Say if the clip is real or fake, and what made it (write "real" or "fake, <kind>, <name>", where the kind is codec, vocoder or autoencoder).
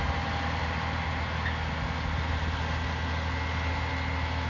real